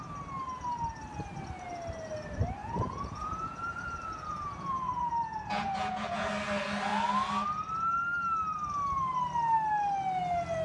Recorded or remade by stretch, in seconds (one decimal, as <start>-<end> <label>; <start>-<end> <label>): 0.0-2.6 recorded; 2.6-6.3 remade; 6.3-10.6 recorded